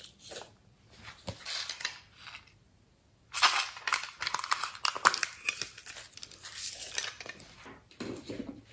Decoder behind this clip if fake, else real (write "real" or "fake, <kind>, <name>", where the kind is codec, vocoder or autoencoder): real